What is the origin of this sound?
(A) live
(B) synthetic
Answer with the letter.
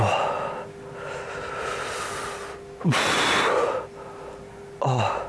A